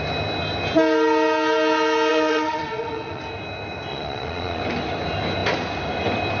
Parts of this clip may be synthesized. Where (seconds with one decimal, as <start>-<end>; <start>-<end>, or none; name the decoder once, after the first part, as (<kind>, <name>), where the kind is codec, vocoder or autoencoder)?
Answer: 2.1-3.2 (vocoder, Vocos); 3.9-4.6